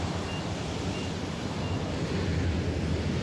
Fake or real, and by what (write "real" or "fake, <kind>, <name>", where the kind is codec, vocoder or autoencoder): real